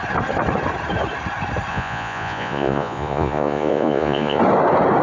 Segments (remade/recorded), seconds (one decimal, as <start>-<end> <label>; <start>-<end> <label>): 0.0-1.7 recorded; 1.7-4.4 remade; 4.4-5.0 recorded